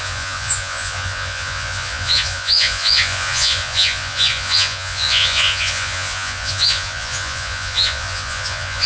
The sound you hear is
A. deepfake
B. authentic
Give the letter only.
A